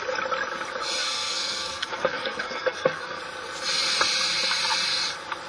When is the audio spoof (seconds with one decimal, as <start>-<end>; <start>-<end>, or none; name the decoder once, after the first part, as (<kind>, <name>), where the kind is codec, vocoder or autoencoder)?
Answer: 1.0-3.2 (codec, SNAC)